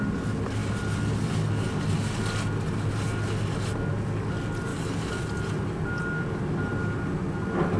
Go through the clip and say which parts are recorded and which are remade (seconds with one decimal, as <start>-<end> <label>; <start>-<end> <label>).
0.0-7.8 recorded